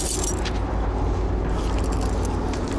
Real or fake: real